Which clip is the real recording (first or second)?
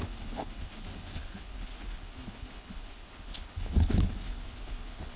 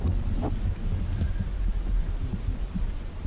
second